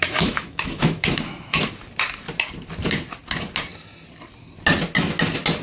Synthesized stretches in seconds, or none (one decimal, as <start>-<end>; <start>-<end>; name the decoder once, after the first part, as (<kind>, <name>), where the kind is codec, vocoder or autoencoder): 0.0-1.7 (autoencoder, DAC-VAE)